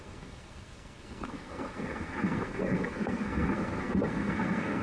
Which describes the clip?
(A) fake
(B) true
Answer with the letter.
A